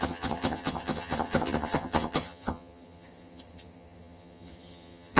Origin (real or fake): fake